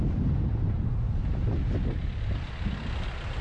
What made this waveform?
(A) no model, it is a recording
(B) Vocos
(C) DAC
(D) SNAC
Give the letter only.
A